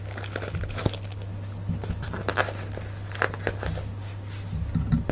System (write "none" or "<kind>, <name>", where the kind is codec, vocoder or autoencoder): none